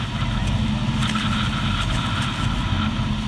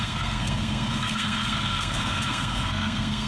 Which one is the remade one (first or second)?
second